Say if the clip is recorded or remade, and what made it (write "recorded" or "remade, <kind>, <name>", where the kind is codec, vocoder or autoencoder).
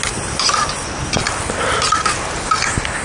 recorded